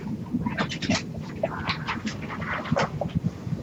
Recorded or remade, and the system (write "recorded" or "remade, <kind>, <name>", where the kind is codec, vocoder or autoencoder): remade, vocoder, BigVGAN v2